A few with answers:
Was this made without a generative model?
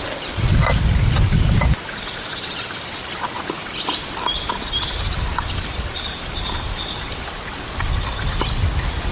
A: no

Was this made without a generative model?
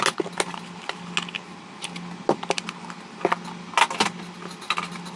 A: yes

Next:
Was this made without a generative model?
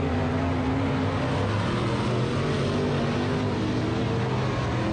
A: yes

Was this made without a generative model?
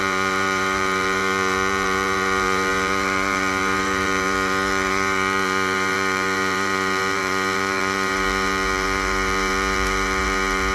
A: no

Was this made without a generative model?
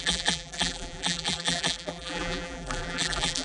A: no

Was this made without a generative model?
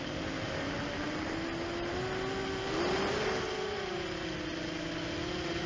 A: yes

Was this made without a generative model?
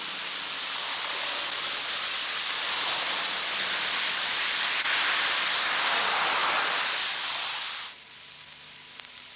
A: yes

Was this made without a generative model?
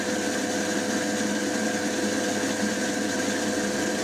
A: yes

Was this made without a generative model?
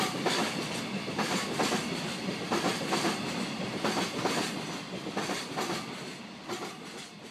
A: no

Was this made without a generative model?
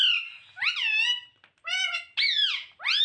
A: yes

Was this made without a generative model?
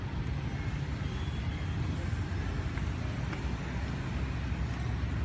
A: yes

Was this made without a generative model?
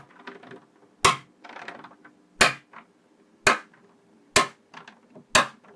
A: yes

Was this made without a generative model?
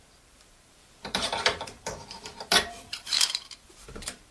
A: no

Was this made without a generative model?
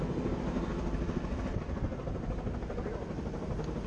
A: yes